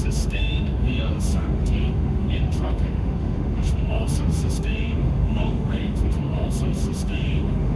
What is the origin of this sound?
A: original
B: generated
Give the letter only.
B